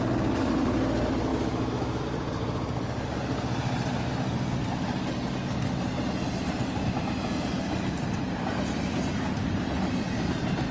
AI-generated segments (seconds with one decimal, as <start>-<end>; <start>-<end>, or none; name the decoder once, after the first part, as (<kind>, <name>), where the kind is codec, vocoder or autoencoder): 1.3-2.0 (autoencoder, DAC-VAE)